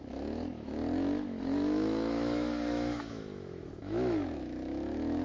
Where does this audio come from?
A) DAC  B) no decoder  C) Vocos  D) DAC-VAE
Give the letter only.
D